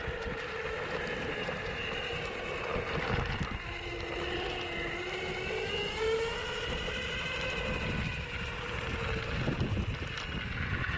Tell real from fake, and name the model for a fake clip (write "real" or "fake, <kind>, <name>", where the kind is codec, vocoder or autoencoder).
real